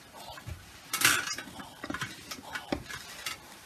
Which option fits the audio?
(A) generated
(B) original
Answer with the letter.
B